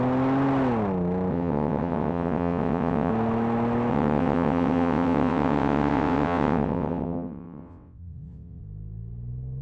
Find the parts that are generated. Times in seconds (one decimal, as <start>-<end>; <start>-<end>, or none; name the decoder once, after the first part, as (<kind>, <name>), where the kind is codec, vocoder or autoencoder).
1.3-3.1 (vocoder, WaveNeXt); 3.9-8.6